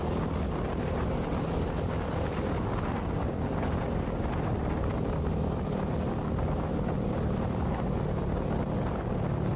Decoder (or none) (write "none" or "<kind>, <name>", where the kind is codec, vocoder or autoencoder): none